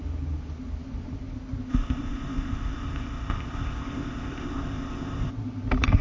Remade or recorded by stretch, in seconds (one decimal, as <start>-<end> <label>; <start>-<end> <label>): 0.0-1.7 recorded; 1.7-5.3 remade; 5.3-6.0 recorded